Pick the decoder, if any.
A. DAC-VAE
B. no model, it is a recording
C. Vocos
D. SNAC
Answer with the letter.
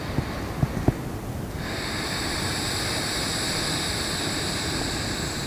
B